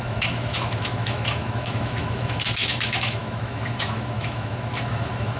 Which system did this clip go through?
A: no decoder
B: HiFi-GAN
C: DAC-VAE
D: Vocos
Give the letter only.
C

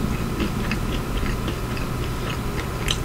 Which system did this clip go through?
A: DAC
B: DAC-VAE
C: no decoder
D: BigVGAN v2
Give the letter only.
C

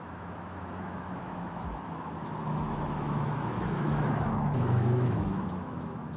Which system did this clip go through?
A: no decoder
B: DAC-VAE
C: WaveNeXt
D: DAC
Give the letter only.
B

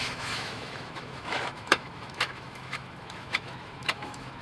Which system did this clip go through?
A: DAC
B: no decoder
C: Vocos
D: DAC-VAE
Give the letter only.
D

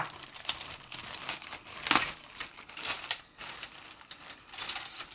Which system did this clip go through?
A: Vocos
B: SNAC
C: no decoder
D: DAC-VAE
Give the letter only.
C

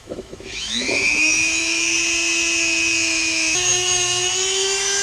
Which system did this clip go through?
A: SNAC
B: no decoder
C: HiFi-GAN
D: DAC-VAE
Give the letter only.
D